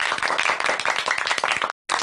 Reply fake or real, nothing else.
real